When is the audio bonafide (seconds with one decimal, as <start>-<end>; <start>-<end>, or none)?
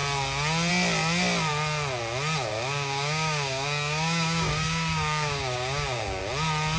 0.0-2.5; 6.2-6.8